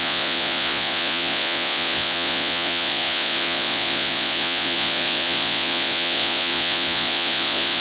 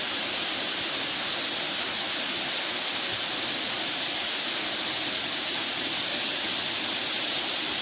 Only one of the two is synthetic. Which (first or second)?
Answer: first